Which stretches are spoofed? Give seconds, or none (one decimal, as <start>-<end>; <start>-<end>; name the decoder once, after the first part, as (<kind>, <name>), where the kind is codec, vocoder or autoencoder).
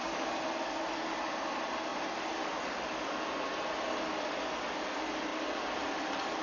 none